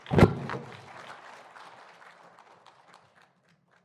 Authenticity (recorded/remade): recorded